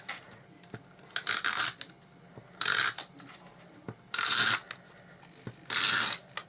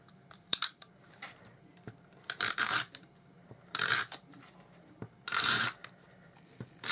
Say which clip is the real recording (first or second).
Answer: first